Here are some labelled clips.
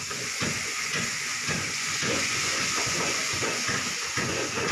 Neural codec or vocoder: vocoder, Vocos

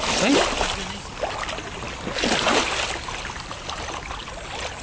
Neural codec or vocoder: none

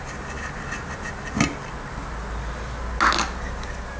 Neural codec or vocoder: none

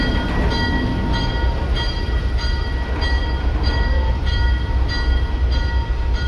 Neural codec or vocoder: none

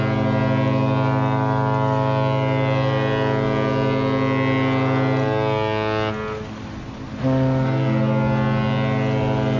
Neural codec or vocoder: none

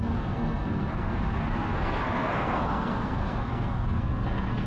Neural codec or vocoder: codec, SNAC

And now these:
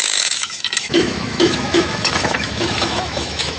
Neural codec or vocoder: autoencoder, DAC-VAE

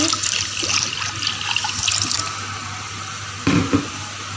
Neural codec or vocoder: vocoder, BigVGAN v2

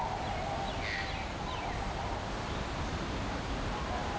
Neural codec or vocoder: none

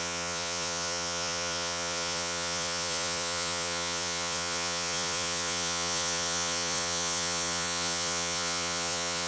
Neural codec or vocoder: vocoder, Vocos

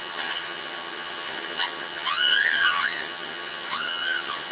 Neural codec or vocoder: vocoder, HiFi-GAN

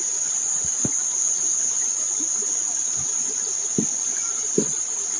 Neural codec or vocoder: none